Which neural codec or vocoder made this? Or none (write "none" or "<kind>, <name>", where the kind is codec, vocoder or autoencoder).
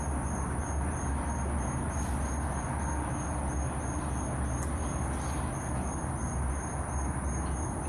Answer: none